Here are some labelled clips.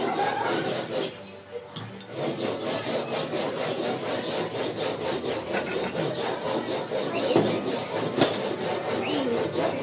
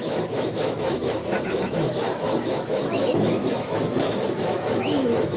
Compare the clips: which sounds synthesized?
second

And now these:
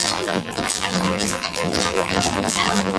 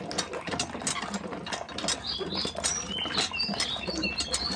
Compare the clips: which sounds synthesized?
first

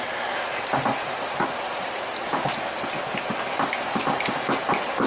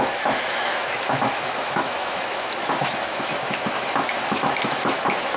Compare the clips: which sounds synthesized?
second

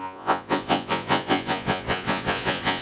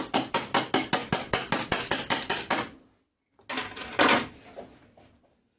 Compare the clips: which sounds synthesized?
first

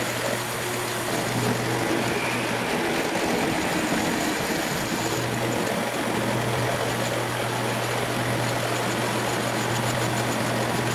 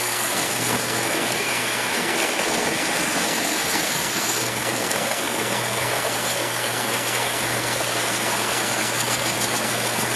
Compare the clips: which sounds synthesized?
second